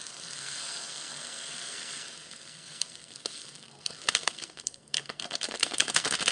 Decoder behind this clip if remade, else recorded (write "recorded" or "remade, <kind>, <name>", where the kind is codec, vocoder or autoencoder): remade, codec, SNAC